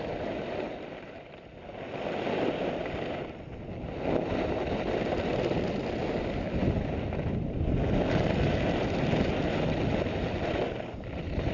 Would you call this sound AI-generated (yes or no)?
no